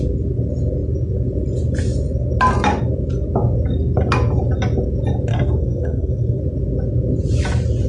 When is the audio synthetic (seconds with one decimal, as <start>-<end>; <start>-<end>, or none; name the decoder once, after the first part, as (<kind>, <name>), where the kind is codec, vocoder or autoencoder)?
5.3-6.4 (codec, SNAC)